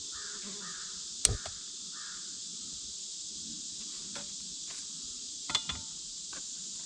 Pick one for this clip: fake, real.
real